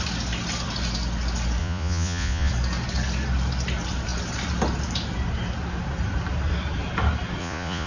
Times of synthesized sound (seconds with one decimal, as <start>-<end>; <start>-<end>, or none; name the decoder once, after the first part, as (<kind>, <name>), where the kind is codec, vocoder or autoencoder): 1.6-2.5 (vocoder, Vocos); 7.4-7.9